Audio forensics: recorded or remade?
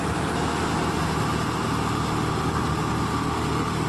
recorded